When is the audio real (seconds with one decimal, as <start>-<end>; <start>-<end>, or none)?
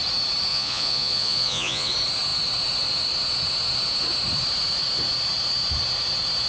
0.0-0.5; 1.9-6.5